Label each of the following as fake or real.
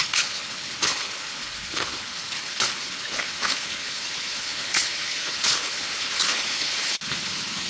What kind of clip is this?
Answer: fake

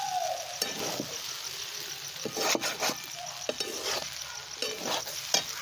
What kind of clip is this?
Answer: real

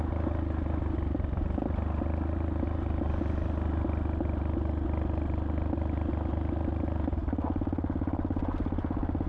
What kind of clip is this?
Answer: real